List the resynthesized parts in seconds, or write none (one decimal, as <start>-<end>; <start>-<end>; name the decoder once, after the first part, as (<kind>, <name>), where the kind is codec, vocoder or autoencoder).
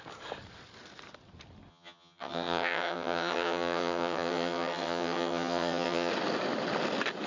1.7-6.1 (vocoder, HiFi-GAN)